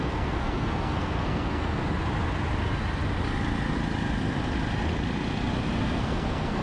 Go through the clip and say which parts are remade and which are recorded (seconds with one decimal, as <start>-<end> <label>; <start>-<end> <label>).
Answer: 0.0-1.8 remade; 1.8-5.8 recorded; 5.8-6.6 remade